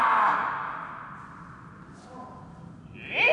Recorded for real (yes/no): yes